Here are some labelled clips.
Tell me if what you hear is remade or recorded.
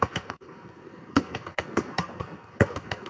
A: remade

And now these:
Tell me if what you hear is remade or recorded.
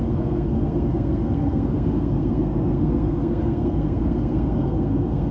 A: remade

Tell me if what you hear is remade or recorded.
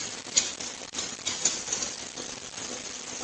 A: recorded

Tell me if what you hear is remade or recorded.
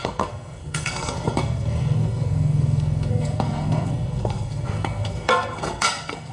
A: remade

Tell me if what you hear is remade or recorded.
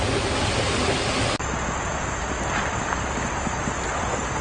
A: recorded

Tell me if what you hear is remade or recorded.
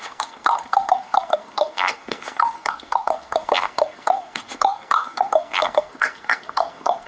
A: remade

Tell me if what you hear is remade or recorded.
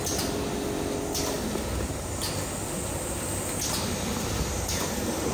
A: recorded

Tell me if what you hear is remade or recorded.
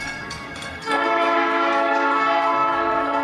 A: remade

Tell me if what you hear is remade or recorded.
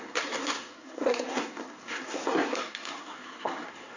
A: remade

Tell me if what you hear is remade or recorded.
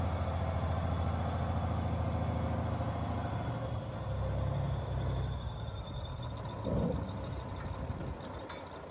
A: recorded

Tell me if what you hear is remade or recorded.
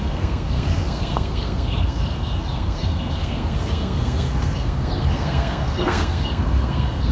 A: remade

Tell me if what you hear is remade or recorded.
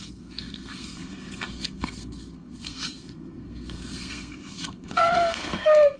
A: remade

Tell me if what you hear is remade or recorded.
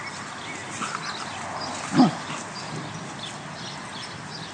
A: recorded